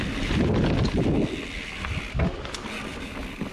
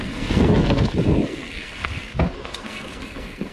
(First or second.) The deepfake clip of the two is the second